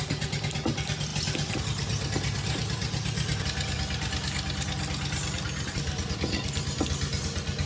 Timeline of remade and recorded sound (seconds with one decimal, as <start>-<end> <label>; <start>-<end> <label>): 0.0-7.7 recorded